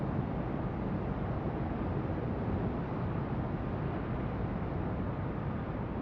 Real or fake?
real